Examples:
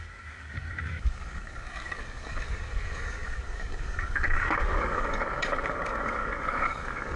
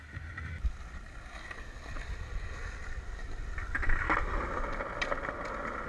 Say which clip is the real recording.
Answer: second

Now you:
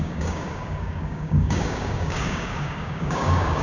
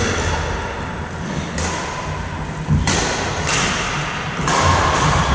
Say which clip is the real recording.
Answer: second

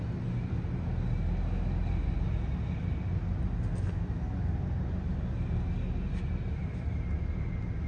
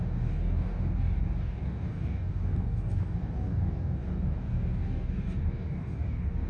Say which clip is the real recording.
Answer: first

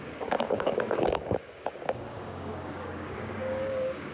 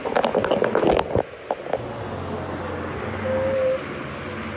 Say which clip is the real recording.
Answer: second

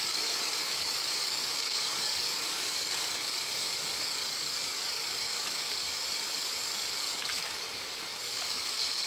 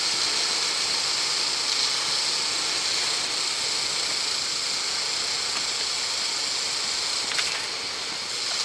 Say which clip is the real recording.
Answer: second